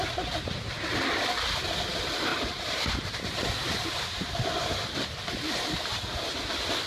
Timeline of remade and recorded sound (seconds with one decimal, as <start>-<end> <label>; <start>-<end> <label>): 0.0-2.3 recorded; 2.3-3.1 remade; 3.1-6.9 recorded